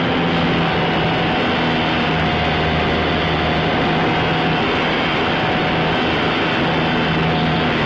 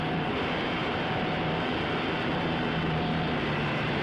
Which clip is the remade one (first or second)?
second